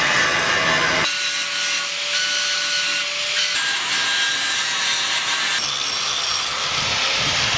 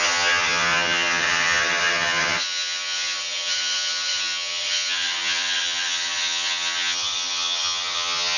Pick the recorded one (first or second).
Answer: first